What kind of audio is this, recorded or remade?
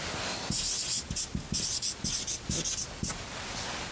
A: recorded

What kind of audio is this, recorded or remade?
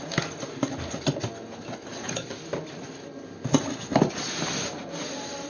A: recorded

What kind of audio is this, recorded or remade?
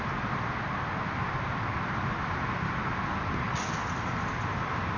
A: recorded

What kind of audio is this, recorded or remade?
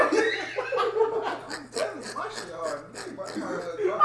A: recorded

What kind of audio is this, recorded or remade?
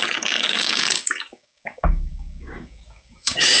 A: remade